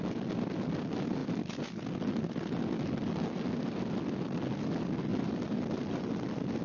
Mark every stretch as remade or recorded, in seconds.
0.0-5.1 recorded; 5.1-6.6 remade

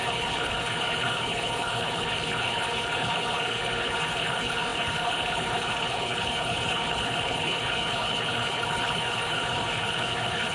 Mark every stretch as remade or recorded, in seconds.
0.0-10.5 remade